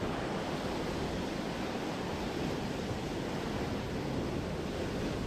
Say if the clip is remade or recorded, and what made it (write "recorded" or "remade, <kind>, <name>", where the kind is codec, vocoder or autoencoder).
recorded